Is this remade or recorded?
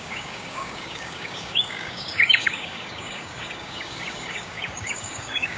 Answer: remade